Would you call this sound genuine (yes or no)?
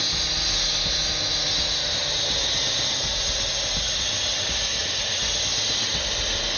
yes